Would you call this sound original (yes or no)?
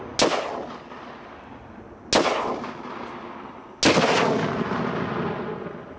yes